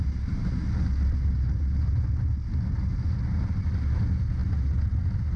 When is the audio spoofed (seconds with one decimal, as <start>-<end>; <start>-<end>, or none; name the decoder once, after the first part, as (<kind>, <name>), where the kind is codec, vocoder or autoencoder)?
none